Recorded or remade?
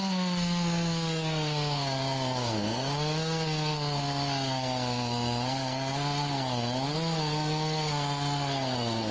remade